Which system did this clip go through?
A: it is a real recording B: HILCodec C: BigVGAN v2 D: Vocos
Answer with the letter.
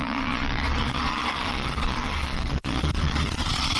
D